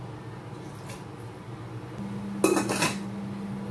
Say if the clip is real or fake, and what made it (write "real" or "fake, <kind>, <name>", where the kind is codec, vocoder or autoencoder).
real